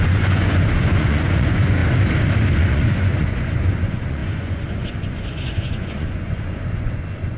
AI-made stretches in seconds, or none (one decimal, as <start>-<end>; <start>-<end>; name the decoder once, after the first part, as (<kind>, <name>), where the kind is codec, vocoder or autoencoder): 0.0-1.8 (vocoder, Vocos); 2.5-7.4